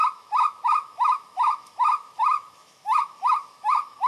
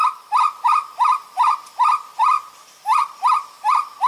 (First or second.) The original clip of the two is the second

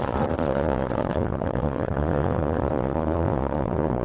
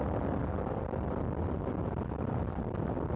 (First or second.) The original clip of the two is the second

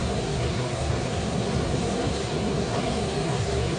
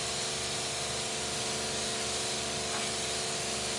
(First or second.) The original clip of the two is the second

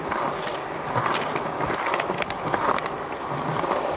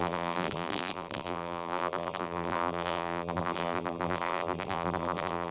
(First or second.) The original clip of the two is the first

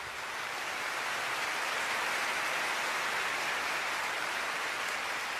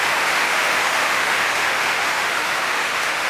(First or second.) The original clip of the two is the first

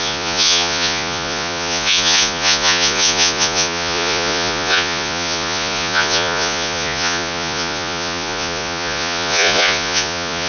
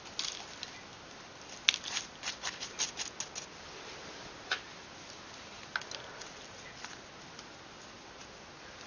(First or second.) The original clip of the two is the second